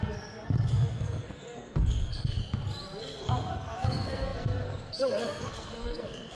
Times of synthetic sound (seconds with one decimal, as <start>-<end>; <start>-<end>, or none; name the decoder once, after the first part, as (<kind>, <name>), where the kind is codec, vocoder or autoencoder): 0.0-2.4 (codec, SNAC); 3.0-6.3